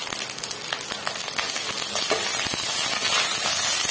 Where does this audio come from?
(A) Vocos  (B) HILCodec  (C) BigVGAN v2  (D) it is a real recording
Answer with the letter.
D